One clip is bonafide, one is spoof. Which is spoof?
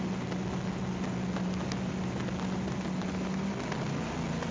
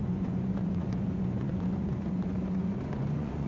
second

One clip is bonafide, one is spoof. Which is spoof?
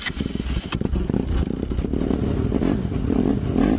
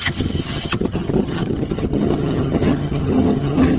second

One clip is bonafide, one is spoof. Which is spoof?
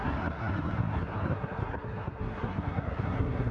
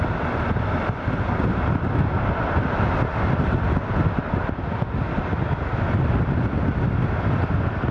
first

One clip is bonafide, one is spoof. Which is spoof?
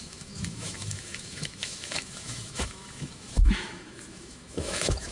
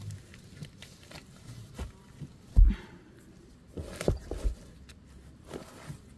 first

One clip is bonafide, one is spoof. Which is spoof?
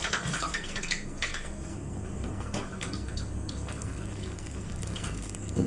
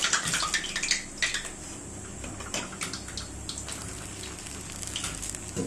first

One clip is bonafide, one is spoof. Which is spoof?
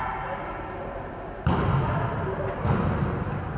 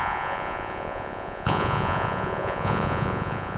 second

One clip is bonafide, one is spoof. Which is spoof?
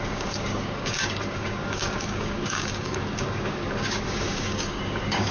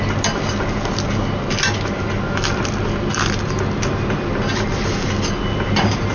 first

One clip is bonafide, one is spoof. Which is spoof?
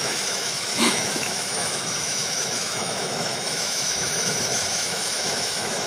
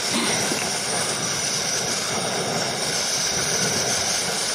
first